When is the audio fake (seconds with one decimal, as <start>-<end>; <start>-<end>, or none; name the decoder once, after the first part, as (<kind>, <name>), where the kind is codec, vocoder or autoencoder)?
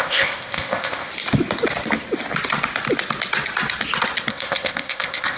0.0-1.1 (codec, ZipCodec); 4.3-5.4